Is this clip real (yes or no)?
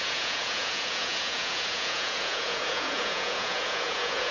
no